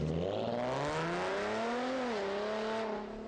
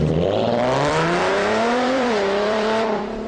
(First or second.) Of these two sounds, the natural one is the first